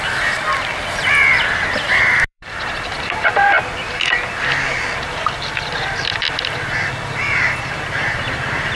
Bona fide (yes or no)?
no